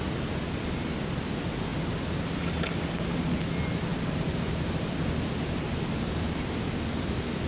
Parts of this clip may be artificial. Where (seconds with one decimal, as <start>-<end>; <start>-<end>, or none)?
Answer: none